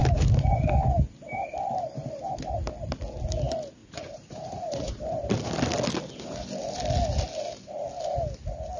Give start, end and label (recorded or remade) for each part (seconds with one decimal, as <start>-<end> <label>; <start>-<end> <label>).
0.0-3.8 recorded; 3.8-5.0 remade; 5.0-8.8 recorded